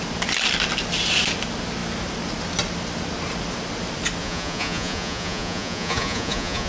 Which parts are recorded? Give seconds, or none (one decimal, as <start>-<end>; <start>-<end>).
0.0-4.2